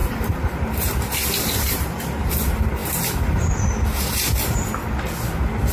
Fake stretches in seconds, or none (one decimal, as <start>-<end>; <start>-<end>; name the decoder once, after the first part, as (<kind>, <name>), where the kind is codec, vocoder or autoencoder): 0.0-2.3 (vocoder, BigVGAN v2); 2.8-4.7